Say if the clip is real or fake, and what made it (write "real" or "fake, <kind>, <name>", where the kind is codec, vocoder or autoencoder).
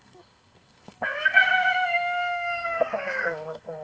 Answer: fake, codec, SNAC